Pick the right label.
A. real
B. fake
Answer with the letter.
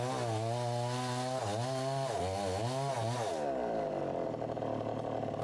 A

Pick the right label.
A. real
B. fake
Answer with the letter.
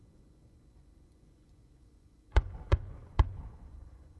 B